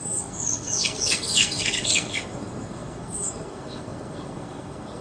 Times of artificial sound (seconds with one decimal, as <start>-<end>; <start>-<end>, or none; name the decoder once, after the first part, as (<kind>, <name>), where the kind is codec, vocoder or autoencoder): 0.0-5.0 (codec, SNAC)